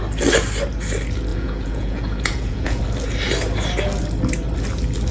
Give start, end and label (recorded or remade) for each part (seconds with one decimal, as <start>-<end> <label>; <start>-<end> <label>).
0.0-1.3 recorded; 1.3-2.8 remade; 2.8-5.1 recorded